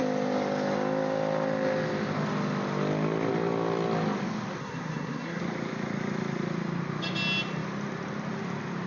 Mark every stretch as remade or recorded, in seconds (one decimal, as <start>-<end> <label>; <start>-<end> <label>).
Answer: 0.0-4.6 recorded; 4.6-5.4 remade; 5.4-8.9 recorded